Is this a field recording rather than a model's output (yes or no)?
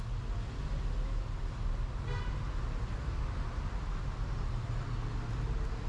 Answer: yes